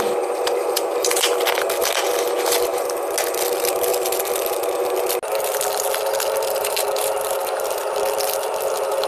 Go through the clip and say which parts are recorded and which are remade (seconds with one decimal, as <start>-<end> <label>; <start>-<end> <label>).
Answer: 0.0-9.1 recorded